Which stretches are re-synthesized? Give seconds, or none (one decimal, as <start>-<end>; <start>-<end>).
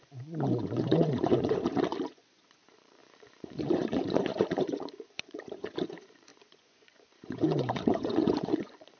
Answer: 0.0-9.0